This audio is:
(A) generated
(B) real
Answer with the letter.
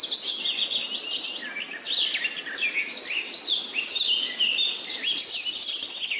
B